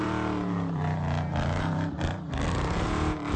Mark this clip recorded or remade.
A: remade